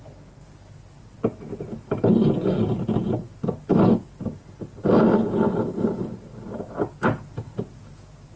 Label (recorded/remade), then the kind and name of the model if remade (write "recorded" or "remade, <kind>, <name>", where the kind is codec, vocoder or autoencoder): recorded